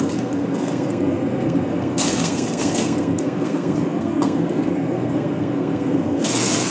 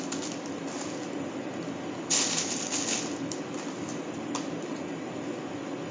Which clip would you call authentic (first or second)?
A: second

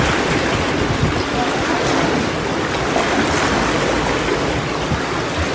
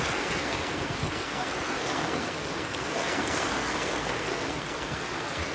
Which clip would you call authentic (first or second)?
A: first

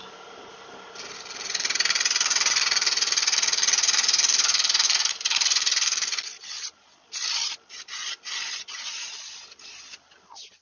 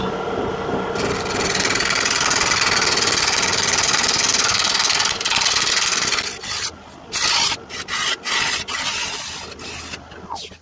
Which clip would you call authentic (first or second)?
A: second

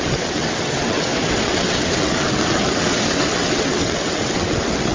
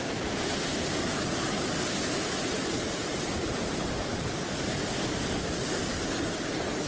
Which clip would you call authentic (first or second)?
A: second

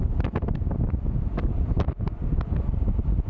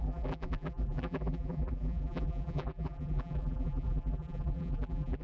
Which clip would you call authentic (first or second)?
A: first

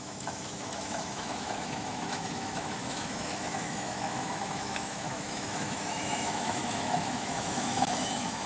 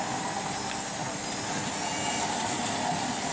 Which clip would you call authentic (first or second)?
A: second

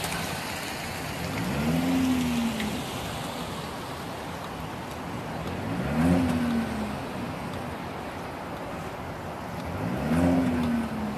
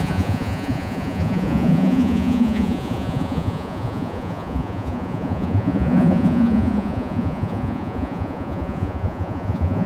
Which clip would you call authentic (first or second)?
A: first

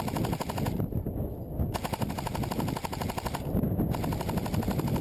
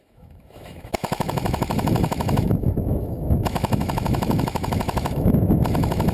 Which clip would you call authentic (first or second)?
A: first